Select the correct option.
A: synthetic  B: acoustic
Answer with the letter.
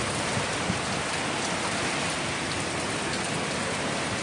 B